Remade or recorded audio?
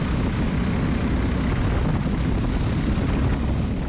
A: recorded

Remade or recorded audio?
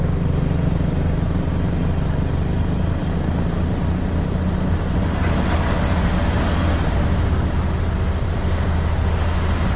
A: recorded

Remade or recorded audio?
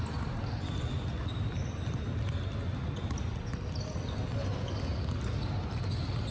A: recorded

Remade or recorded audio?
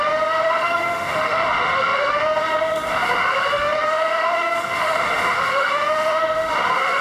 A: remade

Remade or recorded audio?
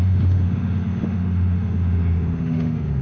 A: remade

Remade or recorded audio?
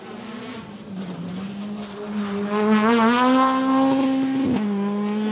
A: recorded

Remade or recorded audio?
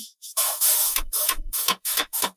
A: remade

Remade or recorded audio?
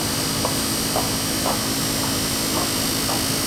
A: recorded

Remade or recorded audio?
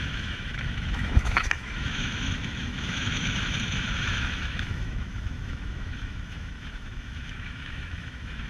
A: remade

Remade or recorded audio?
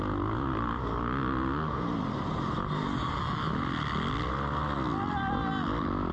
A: recorded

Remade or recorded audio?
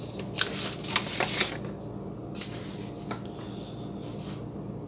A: recorded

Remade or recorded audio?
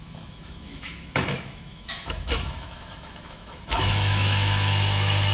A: remade